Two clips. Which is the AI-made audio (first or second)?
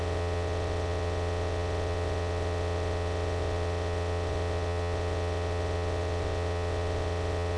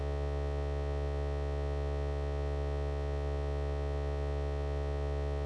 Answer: first